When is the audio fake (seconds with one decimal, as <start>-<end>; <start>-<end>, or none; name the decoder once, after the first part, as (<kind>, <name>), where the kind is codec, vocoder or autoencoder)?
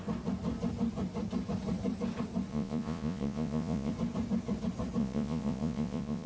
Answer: 2.5-3.9 (vocoder, Vocos); 5.0-6.3